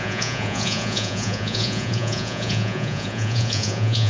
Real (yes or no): no